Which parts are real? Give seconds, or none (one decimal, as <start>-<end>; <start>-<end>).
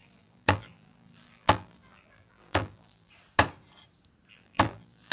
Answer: 3.1-4.3